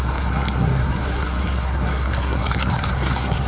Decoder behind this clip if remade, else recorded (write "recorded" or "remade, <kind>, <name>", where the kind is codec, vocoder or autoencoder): remade, codec, SNAC